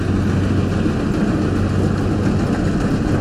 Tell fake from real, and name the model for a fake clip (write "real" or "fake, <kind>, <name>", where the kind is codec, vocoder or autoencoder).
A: real